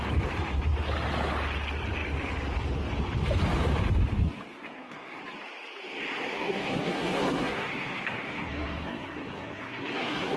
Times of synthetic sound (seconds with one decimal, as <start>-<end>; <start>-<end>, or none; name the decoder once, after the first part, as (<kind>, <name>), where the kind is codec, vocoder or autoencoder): 4.5-5.2 (codec, SNAC); 6.3-10.4